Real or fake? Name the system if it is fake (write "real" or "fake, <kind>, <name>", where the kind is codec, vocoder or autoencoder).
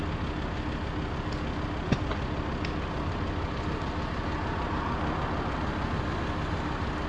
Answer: real